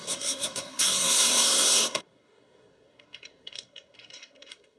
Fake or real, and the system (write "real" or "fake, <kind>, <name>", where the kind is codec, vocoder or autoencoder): fake, codec, SNAC